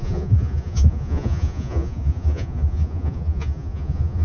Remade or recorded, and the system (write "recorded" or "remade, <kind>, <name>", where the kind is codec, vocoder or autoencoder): remade, vocoder, Vocos